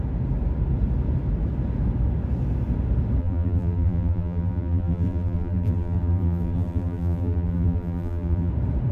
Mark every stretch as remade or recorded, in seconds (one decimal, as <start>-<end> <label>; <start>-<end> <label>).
0.0-3.2 recorded; 3.2-8.5 remade; 8.5-8.9 recorded